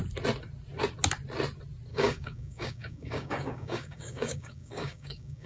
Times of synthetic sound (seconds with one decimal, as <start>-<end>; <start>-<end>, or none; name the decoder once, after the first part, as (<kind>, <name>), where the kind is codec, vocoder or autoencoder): 1.9-5.5 (codec, DAC)